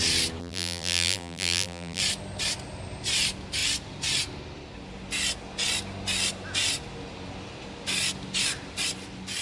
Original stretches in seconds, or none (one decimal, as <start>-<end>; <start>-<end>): 0.0-0.4; 2.0-9.4